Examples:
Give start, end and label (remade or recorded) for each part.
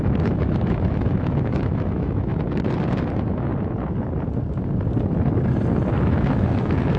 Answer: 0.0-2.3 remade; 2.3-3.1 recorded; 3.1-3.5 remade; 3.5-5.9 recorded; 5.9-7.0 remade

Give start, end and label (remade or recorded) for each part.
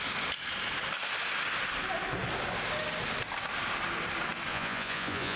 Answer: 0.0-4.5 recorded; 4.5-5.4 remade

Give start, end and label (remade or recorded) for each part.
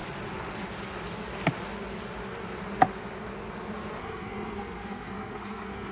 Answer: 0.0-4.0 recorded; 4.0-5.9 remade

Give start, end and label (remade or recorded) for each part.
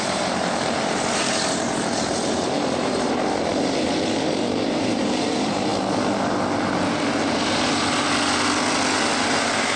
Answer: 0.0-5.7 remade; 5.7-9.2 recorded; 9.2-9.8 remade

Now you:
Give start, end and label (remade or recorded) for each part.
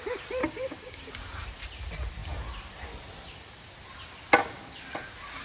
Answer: 0.0-0.4 recorded; 0.4-1.0 remade; 1.0-5.4 recorded